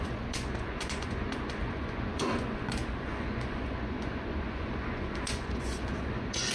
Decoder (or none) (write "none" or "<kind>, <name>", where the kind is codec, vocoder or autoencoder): vocoder, Vocos